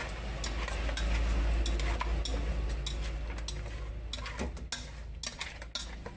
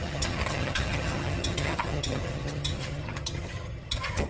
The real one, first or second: first